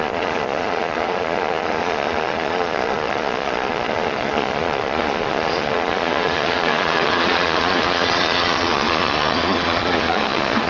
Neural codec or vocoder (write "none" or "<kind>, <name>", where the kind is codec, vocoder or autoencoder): vocoder, Vocos